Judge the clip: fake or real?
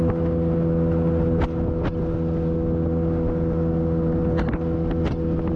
real